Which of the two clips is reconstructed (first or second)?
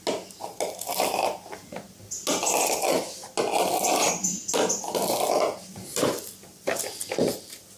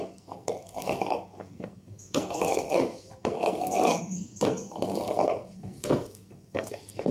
second